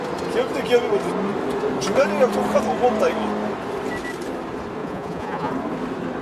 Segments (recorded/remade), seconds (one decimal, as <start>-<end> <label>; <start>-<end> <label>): 0.0-4.8 recorded; 4.8-5.5 remade; 5.5-6.2 recorded